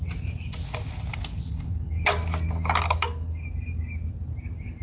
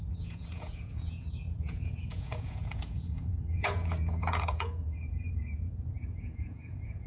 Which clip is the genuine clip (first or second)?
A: first